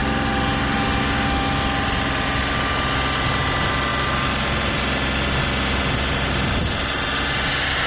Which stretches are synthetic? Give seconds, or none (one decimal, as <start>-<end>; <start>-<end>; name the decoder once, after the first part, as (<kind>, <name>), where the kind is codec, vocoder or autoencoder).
none